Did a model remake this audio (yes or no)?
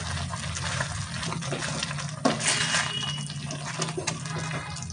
no